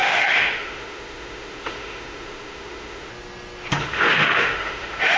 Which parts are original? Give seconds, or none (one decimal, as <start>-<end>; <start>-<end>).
3.1-3.8